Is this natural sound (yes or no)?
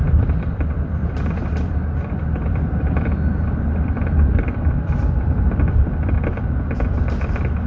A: no